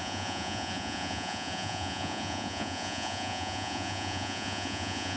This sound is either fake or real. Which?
fake